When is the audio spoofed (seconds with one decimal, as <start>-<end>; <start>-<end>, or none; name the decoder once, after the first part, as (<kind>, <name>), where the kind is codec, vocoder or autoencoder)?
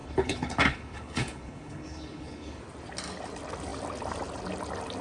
0.0-2.6 (codec, HILCodec)